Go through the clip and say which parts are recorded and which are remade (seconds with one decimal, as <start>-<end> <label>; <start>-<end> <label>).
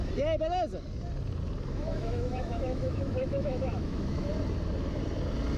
0.0-1.7 recorded; 1.7-4.3 remade; 4.3-5.6 recorded